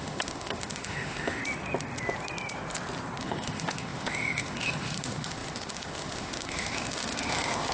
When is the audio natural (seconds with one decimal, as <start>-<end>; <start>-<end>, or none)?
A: 1.4-3.2